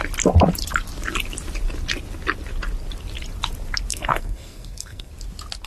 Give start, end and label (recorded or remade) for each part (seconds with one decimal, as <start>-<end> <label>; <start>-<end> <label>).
0.0-3.9 recorded; 3.9-5.1 remade; 5.1-5.7 recorded